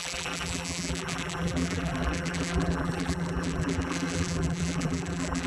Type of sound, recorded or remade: remade